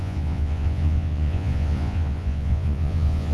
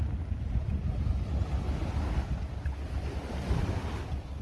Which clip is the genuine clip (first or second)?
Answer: second